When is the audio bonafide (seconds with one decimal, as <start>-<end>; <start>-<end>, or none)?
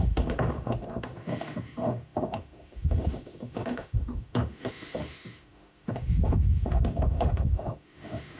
none